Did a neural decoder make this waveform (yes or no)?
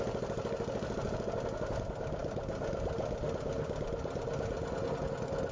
no